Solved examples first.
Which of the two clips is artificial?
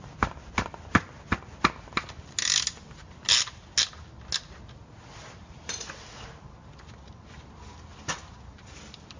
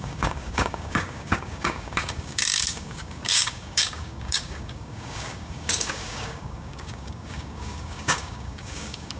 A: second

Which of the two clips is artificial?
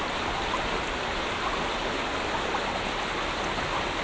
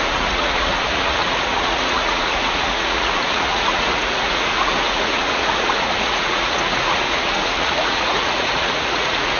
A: second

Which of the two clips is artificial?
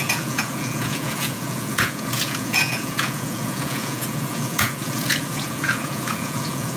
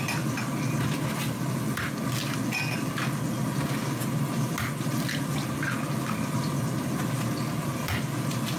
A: first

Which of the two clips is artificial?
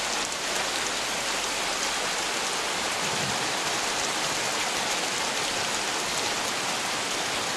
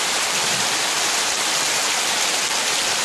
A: second